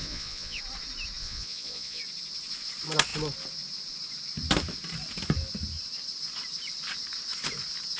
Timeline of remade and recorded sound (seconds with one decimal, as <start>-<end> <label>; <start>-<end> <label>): 0.0-0.6 remade; 0.6-1.2 recorded; 1.2-2.0 remade; 2.0-8.0 recorded